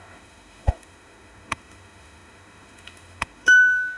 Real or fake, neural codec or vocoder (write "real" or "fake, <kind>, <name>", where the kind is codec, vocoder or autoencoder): fake, autoencoder, DAC-VAE